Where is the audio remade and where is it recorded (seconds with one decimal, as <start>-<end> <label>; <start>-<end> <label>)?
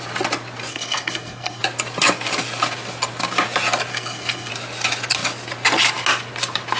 0.0-0.7 recorded; 0.7-1.6 remade; 1.6-3.9 recorded; 3.9-4.5 remade; 4.5-6.8 recorded